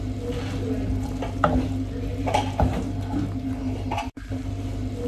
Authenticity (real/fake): real